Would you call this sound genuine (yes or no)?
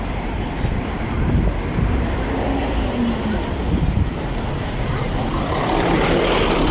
no